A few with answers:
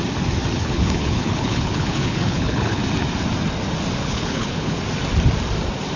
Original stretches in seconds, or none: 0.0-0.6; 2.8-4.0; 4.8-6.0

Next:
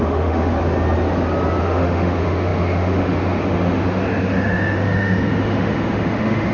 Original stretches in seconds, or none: 0.5-1.6